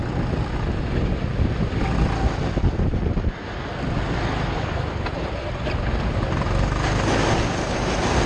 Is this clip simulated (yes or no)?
no